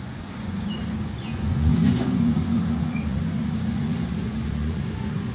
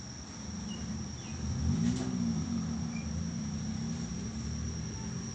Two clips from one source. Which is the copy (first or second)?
first